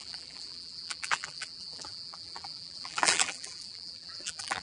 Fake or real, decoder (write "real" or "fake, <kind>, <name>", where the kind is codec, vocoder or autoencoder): fake, vocoder, BigVGAN v2